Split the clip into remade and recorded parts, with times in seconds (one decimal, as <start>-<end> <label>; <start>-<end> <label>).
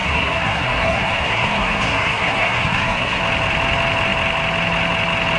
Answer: 0.0-3.2 remade; 3.2-5.4 recorded